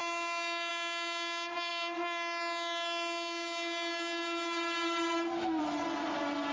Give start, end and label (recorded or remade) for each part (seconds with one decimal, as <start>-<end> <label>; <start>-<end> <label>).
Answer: 0.0-6.5 recorded